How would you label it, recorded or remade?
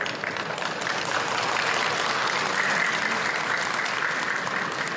recorded